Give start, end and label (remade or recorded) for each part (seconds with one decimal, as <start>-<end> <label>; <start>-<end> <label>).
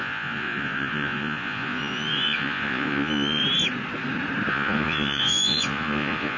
0.0-3.4 remade; 3.4-4.5 recorded; 4.5-6.4 remade